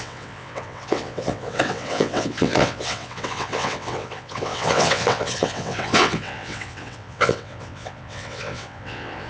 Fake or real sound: fake